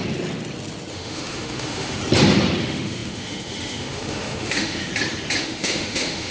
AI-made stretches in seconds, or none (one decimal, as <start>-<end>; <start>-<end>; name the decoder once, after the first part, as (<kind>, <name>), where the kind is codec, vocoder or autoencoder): 0.9-2.0 (autoencoder, DAC-VAE); 2.6-4.9; 5.4-6.3